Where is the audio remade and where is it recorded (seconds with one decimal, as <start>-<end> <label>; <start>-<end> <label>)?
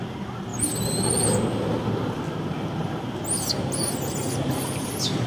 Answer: 0.0-5.3 recorded